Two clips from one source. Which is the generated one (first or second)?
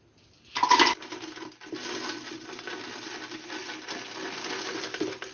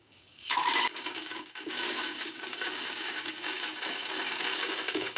second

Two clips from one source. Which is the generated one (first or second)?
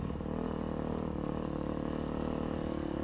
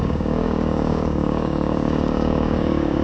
second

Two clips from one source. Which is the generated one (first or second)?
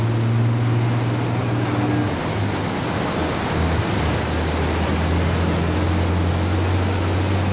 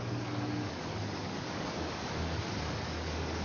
second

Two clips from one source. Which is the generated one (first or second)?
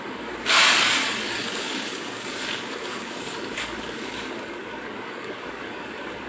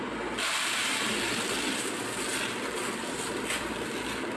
first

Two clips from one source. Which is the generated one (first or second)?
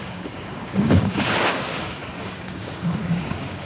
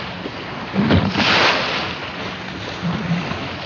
first